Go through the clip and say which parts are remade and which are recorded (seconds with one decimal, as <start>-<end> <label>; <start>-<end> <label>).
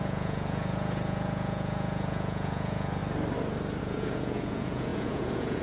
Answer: 0.0-3.0 remade; 3.0-3.8 recorded; 3.8-5.6 remade